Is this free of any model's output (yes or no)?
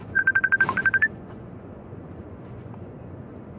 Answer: no